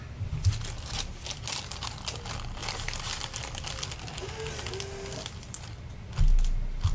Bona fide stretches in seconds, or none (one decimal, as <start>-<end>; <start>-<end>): 0.0-6.9